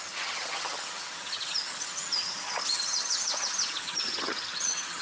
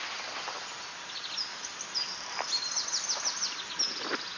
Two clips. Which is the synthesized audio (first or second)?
first